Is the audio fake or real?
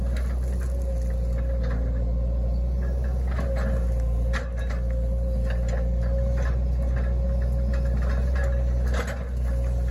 real